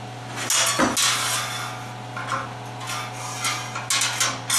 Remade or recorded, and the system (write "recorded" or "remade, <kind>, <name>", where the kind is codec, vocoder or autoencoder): recorded